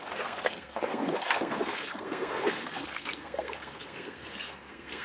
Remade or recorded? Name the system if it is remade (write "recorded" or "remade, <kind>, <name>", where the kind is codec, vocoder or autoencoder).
remade, codec, SNAC